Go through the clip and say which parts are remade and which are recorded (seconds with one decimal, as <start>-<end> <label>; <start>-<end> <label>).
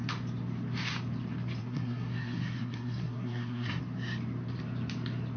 0.0-1.6 recorded; 1.6-3.8 remade; 3.8-5.4 recorded